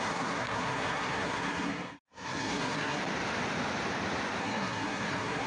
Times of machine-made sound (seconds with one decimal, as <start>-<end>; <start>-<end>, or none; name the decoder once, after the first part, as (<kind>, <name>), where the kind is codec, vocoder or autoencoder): 0.0-3.0 (codec, SNAC); 4.4-5.5